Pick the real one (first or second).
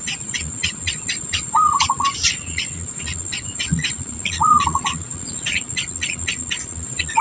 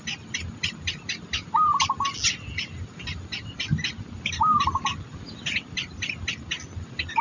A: second